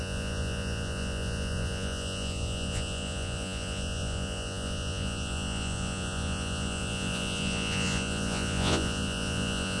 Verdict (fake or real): fake